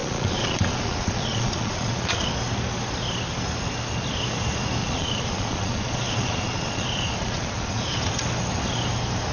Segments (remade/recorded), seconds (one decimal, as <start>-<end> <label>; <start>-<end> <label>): 0.0-2.3 remade; 2.3-4.8 recorded; 4.8-8.1 remade; 8.1-9.3 recorded